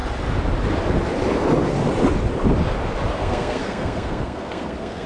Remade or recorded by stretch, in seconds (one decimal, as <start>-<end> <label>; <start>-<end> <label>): 0.0-3.1 recorded; 3.1-5.1 remade